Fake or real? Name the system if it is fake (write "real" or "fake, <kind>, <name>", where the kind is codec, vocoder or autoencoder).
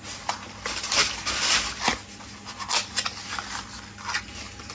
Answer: real